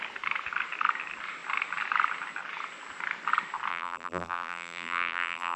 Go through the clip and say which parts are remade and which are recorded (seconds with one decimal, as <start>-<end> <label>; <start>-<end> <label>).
0.0-3.7 recorded; 3.7-5.6 remade